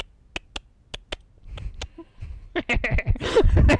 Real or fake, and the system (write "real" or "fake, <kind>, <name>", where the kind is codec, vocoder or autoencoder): real